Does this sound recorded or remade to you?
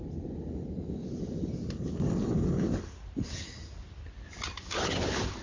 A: recorded